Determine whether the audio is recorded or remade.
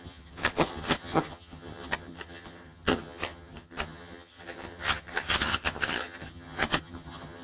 remade